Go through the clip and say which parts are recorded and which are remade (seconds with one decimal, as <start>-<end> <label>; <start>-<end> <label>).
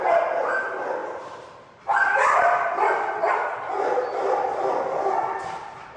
0.0-6.0 recorded